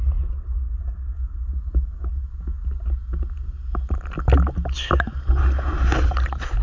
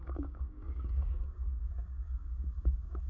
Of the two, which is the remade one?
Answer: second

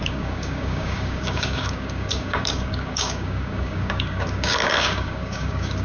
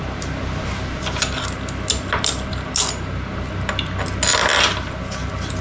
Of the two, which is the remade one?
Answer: first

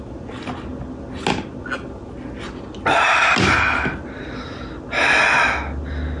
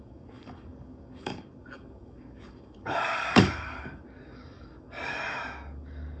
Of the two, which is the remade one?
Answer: second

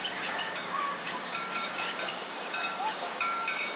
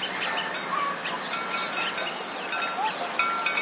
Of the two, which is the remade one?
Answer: first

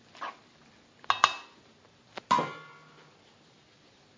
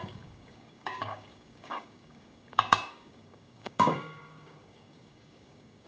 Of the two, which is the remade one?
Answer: second